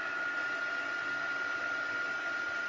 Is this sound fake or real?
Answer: real